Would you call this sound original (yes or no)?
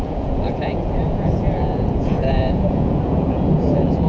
no